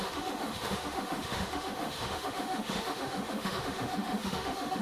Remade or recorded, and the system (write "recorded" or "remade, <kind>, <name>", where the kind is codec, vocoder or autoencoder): remade, autoencoder, DAC-VAE